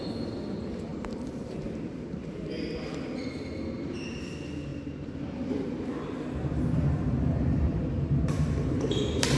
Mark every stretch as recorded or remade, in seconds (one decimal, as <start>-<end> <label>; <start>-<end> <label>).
0.0-0.9 recorded; 0.9-2.3 remade; 2.3-4.7 recorded; 4.7-9.4 remade